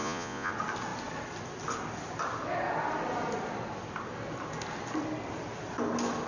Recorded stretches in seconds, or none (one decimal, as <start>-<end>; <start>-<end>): 0.5-6.3